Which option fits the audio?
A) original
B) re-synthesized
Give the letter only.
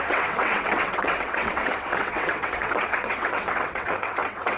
B